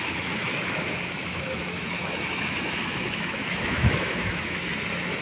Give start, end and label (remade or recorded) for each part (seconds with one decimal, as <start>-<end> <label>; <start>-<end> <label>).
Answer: 0.0-4.6 remade; 4.6-5.2 recorded